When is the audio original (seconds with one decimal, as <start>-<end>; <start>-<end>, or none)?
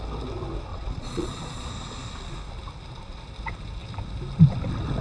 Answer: 0.0-0.7; 1.7-5.0